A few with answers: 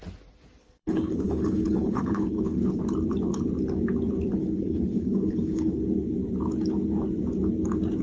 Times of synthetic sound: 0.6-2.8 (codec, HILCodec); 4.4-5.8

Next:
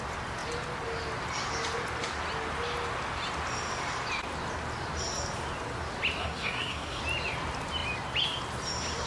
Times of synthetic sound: 6.2-7.0 (codec, SNAC)

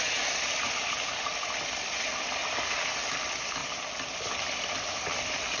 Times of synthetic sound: 0.0-2.4 (vocoder, BigVGAN v2); 3.2-3.6; 4.1-5.6

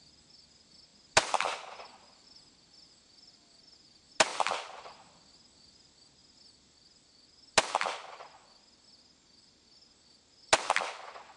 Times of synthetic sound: none

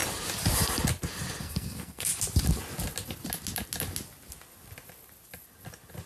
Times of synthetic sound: 1.4-2.1 (codec, SNAC)